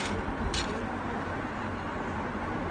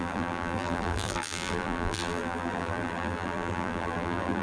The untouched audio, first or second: first